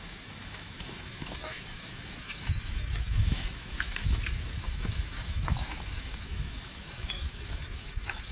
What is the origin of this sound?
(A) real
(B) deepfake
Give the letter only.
B